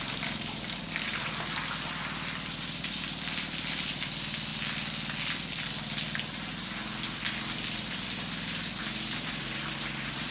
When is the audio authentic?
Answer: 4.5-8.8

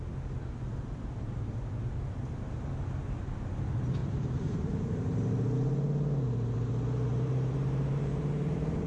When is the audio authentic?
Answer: 0.0-4.0; 5.2-7.1

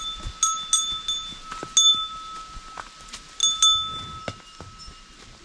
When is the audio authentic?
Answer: 0.0-5.4